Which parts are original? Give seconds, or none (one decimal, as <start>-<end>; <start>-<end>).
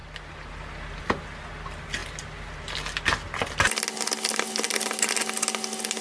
0.0-6.0